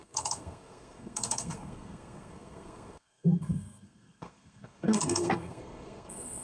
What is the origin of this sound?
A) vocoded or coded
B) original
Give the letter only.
A